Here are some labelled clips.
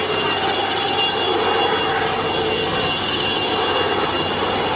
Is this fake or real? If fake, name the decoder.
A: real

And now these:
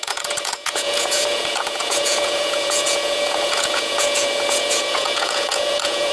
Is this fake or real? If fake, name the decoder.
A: fake, vocoder, Vocos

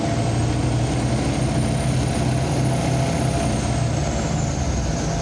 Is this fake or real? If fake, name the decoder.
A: real